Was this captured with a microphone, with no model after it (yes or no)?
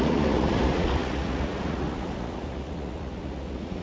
no